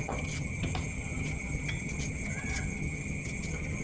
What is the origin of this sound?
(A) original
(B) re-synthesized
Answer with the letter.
B